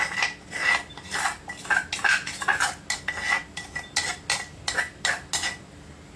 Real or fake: real